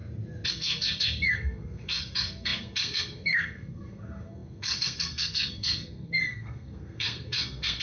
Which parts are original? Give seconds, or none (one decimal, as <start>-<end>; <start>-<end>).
0.0-0.5